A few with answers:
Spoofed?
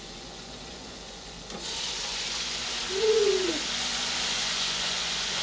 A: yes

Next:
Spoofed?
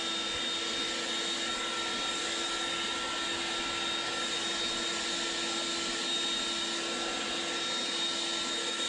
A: no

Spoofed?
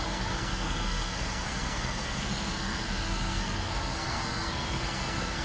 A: yes